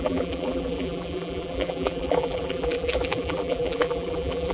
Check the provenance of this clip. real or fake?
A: fake